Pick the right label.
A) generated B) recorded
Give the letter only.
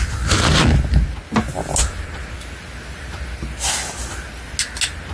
B